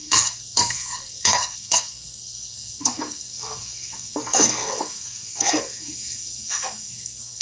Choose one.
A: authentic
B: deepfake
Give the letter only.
B